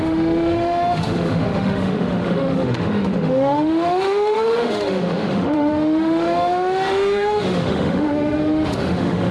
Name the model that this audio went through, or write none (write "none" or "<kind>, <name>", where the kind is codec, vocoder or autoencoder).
autoencoder, DAC-VAE